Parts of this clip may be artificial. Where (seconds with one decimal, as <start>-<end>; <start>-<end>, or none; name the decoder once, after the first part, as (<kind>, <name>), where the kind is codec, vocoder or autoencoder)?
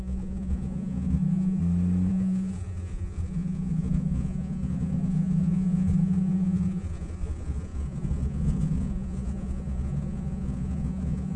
0.0-1.6 (vocoder, Vocos); 2.1-11.4